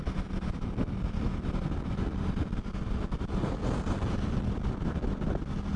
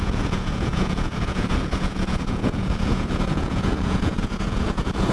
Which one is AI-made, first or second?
second